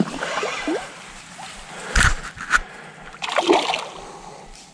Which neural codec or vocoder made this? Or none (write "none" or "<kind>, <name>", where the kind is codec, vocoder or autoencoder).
none